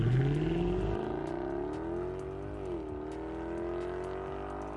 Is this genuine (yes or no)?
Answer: yes